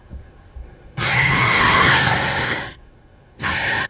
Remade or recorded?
remade